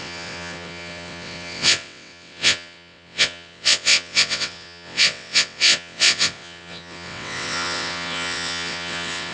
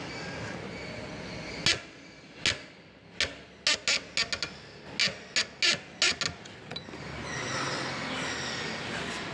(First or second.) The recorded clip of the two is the second